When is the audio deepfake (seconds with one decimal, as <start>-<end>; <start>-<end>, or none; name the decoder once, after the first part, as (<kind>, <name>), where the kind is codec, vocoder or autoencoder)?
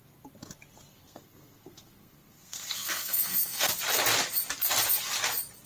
0.9-3.7 (codec, SNAC)